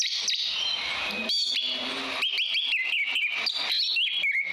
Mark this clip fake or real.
real